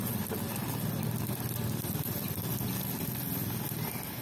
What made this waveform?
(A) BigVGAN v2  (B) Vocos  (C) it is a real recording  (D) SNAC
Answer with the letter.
C